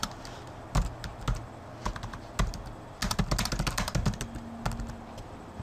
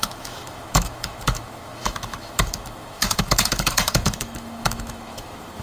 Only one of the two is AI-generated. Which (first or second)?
second